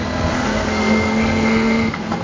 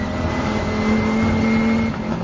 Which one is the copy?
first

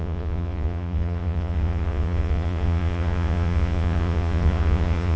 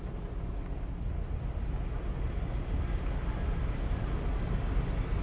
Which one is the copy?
first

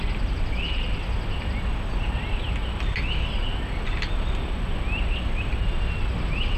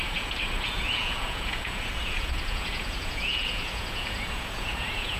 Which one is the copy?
second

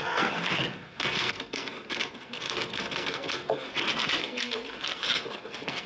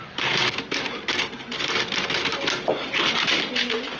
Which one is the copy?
first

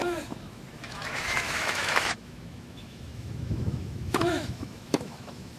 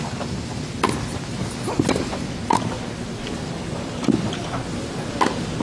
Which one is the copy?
first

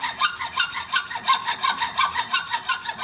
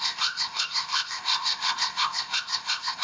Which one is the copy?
second